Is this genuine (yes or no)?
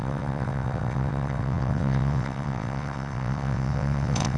no